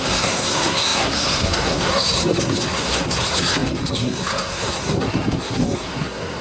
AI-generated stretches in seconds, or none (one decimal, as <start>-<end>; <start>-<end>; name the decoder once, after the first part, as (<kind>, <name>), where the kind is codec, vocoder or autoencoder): 0.0-6.4 (codec, SNAC)